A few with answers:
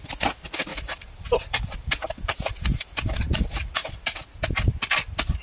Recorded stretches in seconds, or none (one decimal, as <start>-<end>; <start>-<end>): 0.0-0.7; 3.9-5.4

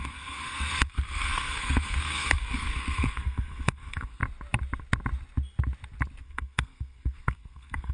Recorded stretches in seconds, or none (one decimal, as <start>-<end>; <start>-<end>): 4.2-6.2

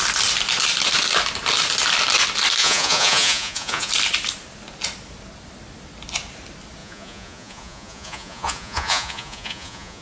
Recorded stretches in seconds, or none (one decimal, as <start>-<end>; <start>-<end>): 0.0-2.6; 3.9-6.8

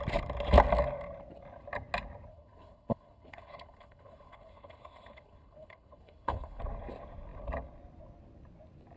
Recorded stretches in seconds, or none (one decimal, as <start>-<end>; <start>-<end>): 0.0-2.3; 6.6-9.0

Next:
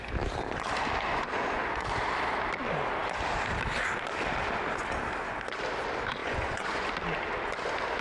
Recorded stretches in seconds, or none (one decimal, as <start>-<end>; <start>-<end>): 0.0-1.1; 1.6-6.2; 6.9-8.0

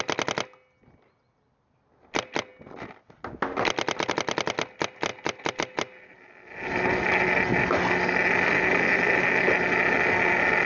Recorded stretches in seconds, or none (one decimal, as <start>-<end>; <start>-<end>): 0.0-10.7